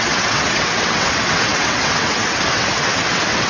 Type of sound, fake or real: fake